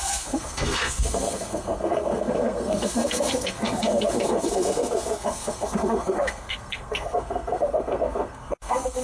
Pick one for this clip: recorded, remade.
remade